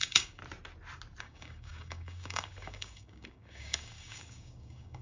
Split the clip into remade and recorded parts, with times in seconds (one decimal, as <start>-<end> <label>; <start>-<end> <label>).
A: 0.0-0.4 remade; 0.4-1.2 recorded; 1.2-5.0 remade